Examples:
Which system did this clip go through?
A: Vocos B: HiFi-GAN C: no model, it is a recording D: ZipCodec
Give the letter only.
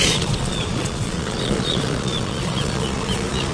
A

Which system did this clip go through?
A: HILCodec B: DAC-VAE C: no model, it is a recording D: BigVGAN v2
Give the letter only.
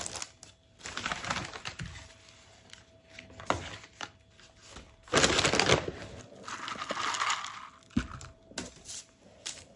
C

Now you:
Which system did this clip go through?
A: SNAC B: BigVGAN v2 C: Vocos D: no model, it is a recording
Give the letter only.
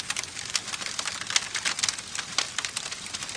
D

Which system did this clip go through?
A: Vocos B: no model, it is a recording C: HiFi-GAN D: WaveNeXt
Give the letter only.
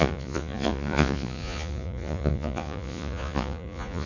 A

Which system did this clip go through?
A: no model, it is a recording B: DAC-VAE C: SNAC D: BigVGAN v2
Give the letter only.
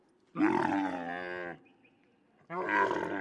A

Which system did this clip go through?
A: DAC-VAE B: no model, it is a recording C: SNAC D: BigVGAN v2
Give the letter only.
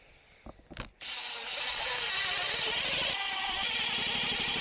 B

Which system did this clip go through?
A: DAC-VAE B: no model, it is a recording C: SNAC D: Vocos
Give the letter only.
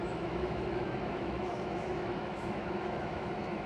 A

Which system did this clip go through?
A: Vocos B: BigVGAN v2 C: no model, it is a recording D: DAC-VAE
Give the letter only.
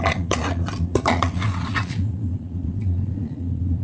A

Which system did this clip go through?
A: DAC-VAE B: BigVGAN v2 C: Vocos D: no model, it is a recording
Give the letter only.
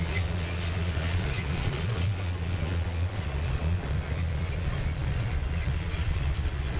C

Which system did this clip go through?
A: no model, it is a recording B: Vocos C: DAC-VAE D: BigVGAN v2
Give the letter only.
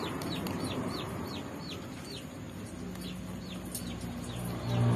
A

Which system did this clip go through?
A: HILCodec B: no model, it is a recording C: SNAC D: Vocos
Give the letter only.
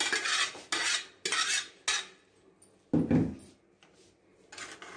B